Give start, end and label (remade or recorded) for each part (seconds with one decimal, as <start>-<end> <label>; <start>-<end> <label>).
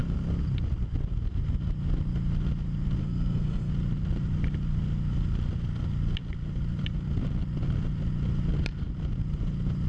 0.0-3.0 recorded; 3.0-3.7 remade; 3.7-9.9 recorded